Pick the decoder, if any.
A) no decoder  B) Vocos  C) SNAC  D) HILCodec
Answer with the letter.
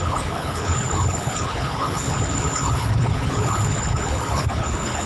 D